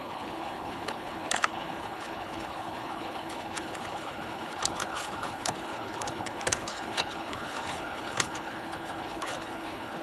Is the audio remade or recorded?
remade